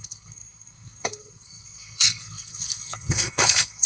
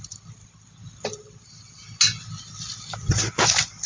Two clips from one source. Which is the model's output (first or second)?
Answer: first